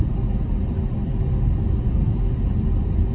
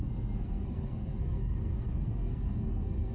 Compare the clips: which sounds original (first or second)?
first